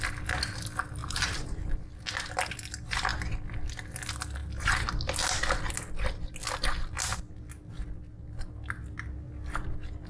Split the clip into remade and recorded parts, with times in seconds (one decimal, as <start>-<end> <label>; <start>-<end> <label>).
0.0-1.0 recorded; 1.0-2.0 remade; 2.0-10.1 recorded